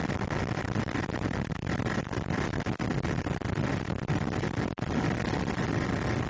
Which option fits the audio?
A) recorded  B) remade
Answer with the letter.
A